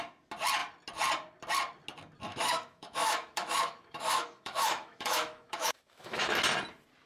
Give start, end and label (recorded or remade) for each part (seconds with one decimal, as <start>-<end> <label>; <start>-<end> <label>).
0.0-2.3 recorded; 2.3-6.4 remade; 6.4-7.1 recorded